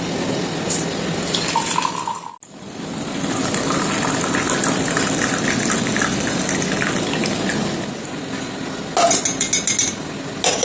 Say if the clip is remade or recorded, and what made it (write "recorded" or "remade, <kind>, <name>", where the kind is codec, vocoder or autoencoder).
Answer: recorded